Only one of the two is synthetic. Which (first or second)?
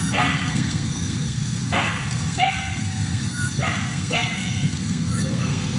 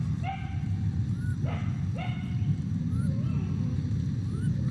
first